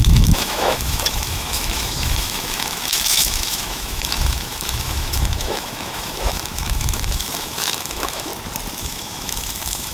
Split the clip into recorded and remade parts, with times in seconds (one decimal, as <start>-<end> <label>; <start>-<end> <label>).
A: 0.0-8.3 remade; 8.3-8.8 recorded; 8.8-9.9 remade